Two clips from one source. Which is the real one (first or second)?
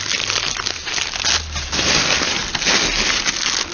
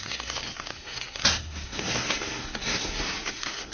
first